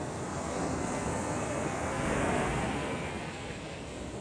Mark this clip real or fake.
fake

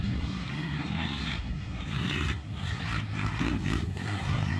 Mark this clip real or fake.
fake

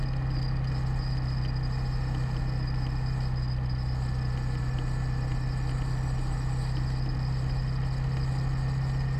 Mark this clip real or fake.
real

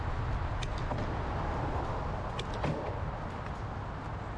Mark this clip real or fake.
real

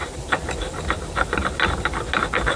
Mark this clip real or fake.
real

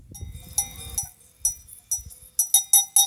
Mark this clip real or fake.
real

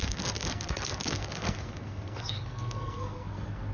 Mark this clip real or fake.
fake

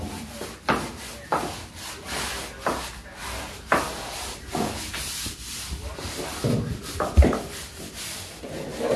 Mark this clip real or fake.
real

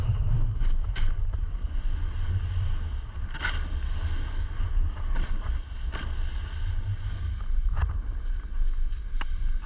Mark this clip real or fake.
real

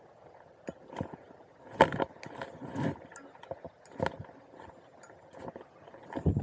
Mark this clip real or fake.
real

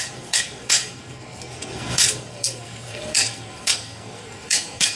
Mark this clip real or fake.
fake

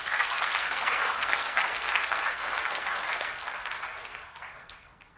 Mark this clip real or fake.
fake